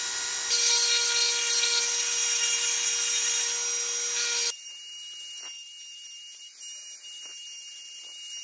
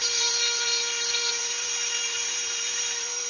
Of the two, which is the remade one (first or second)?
second